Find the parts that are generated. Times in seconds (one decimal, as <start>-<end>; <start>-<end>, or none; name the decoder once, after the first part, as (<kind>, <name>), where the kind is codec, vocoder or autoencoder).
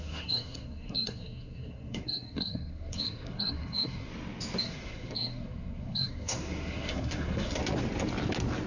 0.0-4.1 (codec, SNAC); 4.6-7.6